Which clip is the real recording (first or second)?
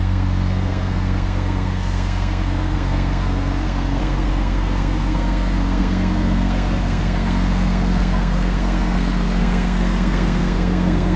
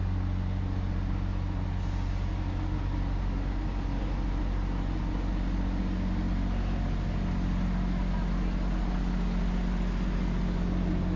second